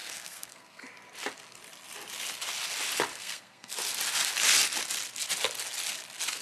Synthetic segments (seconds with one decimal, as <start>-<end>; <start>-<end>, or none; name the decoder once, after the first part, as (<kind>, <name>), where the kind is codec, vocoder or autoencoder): 0.0-0.8 (codec, SNAC); 3.1-3.7